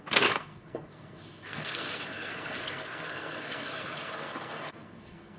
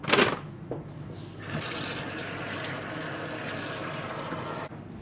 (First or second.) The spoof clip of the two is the first